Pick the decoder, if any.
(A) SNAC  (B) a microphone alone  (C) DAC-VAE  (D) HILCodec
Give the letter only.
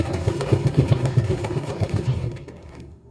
A